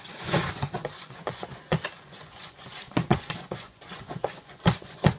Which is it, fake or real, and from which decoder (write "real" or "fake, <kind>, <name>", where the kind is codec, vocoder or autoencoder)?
fake, vocoder, Vocos